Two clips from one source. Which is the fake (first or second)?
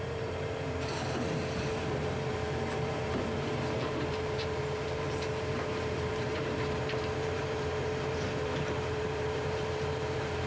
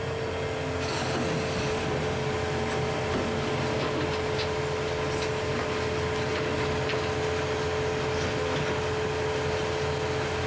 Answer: first